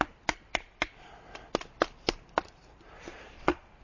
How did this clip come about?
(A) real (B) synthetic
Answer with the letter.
A